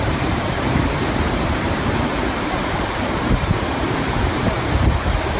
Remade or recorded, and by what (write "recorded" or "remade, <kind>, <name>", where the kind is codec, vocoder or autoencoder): remade, vocoder, BigVGAN v2